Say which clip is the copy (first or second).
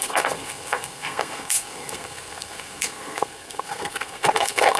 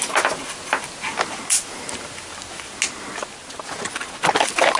first